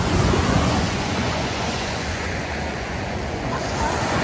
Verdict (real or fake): fake